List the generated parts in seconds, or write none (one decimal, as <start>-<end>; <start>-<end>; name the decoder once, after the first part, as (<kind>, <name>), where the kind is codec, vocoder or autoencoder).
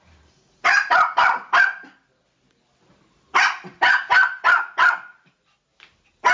none